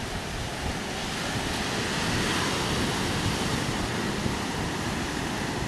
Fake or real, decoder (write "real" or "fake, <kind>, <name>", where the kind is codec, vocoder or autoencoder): real